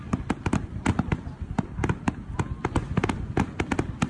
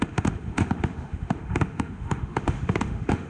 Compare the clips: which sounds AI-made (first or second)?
second